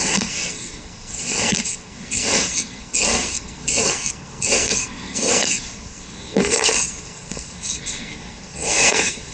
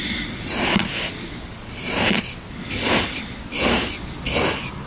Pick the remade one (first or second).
first